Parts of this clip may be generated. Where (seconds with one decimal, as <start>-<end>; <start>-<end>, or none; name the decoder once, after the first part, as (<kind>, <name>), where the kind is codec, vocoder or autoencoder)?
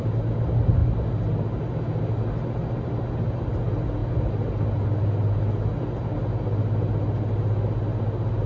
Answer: none